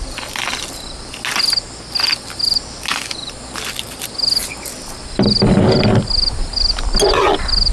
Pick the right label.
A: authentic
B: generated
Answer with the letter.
A